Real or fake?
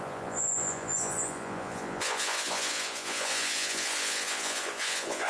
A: fake